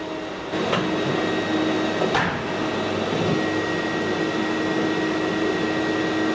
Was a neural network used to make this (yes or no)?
no